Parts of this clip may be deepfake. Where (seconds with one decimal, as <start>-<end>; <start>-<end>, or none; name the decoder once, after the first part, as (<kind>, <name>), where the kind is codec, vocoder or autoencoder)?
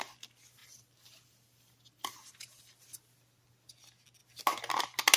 0.6-2.3 (vocoder, BigVGAN v2)